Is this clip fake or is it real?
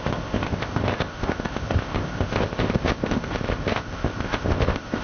fake